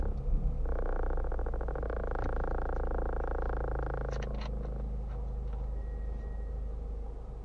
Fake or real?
real